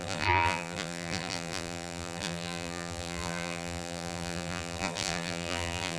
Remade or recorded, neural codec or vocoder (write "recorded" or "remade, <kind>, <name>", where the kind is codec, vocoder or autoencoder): remade, vocoder, BigVGAN v2